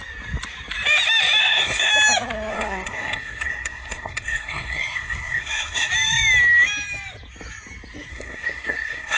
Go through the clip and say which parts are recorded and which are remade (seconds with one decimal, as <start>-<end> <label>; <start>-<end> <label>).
0.0-1.4 recorded; 1.4-1.9 remade; 1.9-2.5 recorded; 2.5-5.9 remade; 5.9-8.1 recorded; 8.1-9.2 remade